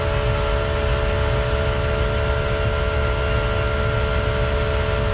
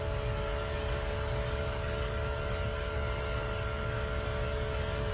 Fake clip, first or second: second